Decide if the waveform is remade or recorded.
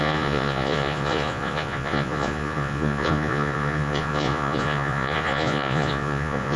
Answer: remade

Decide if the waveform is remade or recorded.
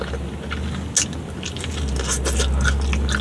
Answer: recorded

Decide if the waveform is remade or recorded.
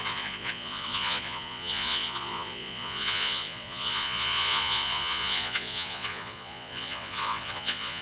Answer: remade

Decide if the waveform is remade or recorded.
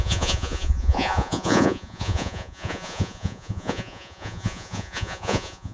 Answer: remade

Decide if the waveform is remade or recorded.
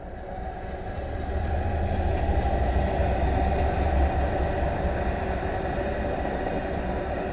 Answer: recorded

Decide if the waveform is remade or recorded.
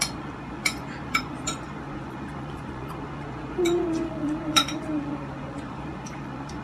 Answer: remade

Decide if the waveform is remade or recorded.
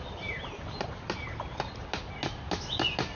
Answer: recorded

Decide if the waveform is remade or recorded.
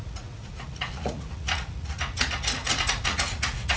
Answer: remade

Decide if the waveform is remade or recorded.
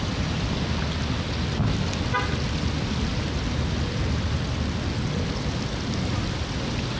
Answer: recorded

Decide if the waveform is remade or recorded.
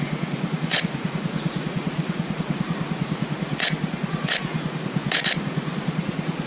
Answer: remade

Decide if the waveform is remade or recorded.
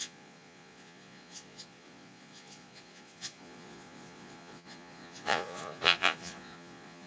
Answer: remade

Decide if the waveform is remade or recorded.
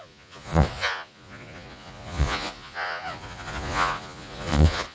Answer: remade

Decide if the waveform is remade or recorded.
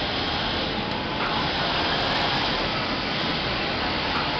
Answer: recorded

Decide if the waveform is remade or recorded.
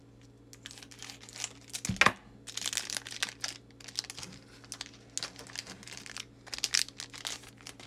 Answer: recorded